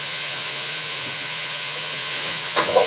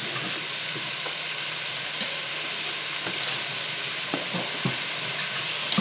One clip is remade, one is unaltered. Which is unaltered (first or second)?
second